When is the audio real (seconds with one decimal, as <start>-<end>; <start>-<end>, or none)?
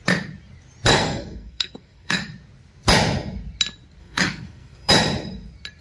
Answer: 0.0-0.9; 2.2-4.0; 4.9-5.8